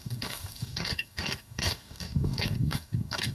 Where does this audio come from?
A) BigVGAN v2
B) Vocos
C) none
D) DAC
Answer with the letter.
D